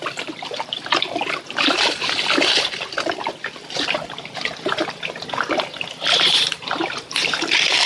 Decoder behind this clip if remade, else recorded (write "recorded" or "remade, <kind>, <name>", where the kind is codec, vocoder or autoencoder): remade, vocoder, BigVGAN v2